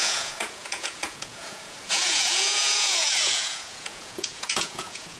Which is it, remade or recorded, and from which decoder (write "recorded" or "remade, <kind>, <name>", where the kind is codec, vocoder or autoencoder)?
remade, vocoder, Vocos